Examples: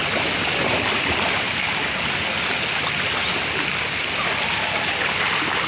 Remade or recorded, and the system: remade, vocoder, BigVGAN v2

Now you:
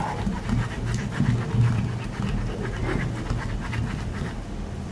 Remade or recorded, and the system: recorded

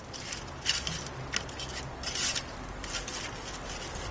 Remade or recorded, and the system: recorded